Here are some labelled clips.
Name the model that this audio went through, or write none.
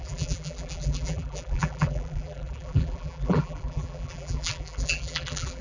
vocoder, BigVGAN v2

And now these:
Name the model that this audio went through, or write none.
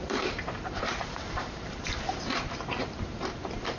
vocoder, BigVGAN v2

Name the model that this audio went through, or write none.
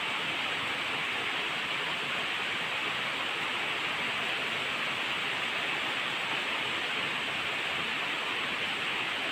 none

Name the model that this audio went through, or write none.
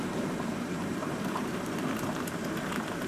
vocoder, BigVGAN v2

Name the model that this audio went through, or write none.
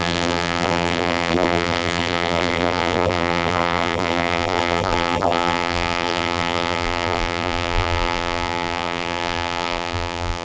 vocoder, BigVGAN v2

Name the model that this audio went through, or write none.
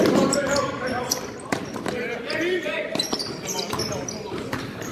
vocoder, BigVGAN v2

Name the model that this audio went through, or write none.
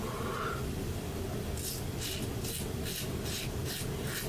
none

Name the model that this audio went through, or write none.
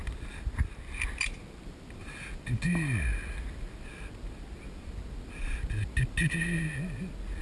none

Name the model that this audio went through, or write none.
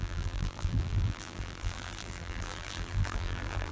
vocoder, BigVGAN v2